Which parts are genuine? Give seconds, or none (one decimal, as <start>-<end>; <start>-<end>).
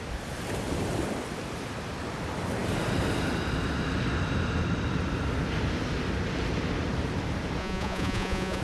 0.0-7.6